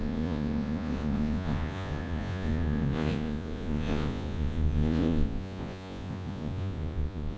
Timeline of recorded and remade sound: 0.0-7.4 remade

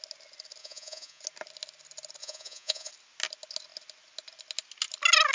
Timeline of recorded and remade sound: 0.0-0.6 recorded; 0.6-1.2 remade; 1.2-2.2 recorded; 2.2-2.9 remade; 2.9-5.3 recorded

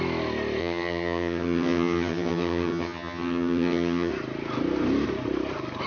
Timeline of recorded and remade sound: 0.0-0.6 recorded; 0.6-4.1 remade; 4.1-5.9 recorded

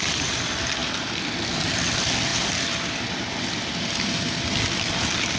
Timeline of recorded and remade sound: 0.0-0.8 recorded; 0.8-1.4 remade; 1.4-2.3 recorded; 2.3-3.6 remade; 3.6-5.4 recorded

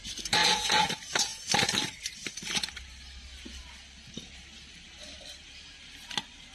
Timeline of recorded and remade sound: 0.0-0.4 recorded; 0.4-0.9 remade; 0.9-6.5 recorded

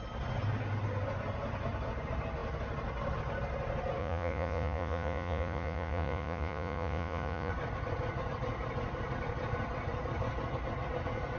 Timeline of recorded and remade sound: 0.0-4.0 recorded; 4.0-7.5 remade; 7.5-11.4 recorded

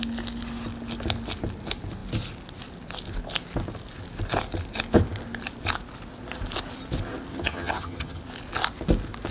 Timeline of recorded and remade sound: 0.0-7.3 recorded; 7.3-8.2 remade; 8.2-9.3 recorded

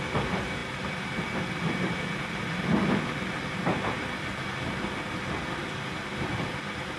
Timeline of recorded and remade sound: 0.0-7.0 recorded